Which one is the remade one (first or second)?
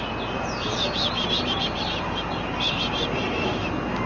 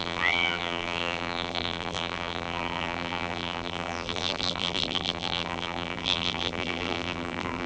second